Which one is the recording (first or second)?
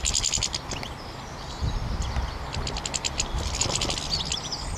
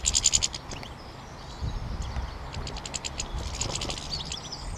second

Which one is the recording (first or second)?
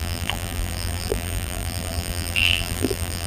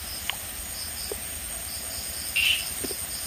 second